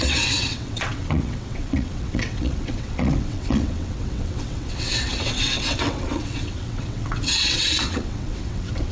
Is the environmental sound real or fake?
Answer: fake